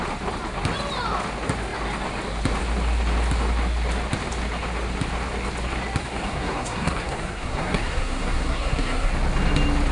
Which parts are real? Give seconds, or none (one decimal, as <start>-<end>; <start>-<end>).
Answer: 0.0-6.0; 9.1-9.9